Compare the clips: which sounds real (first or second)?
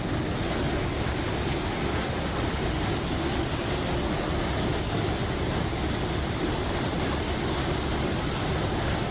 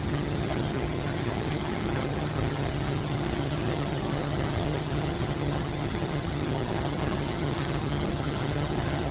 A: first